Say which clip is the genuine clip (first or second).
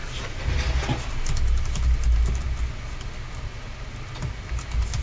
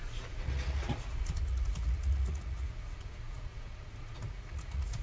first